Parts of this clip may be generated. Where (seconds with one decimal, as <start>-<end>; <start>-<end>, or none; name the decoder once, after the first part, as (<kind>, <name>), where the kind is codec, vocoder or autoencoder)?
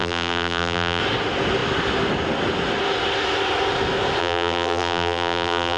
0.0-1.0 (vocoder, BigVGAN v2); 4.2-5.8